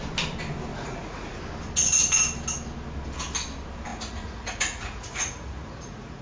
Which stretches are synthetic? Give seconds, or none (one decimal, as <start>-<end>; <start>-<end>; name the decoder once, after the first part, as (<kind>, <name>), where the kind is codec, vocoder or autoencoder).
0.7-1.4 (vocoder, Vocos); 3.9-6.2